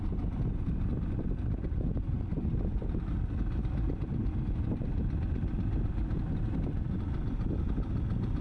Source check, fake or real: real